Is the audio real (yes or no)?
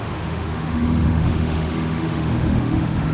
no